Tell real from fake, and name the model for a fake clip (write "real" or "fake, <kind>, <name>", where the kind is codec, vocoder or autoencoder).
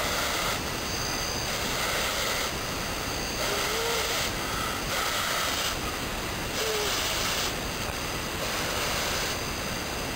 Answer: real